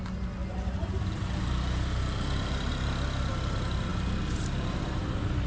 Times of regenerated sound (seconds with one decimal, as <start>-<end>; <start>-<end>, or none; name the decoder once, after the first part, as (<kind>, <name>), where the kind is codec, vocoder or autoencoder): 0.8-2.7 (vocoder, BigVGAN v2); 3.9-5.0